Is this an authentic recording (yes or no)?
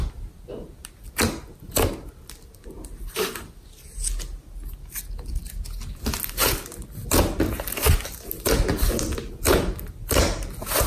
yes